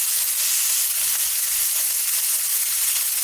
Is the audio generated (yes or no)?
no